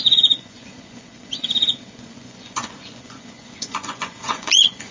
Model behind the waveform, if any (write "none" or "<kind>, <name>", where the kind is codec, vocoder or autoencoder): vocoder, Vocos